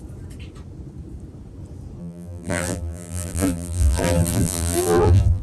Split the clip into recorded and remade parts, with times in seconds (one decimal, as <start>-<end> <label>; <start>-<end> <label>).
0.0-2.0 recorded; 2.0-5.4 remade